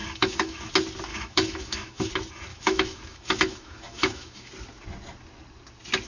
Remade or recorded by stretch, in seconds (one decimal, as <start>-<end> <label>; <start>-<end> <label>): 0.0-0.7 remade; 0.7-1.1 recorded; 1.1-2.1 remade; 2.1-2.5 recorded; 2.5-4.5 remade; 4.5-6.1 recorded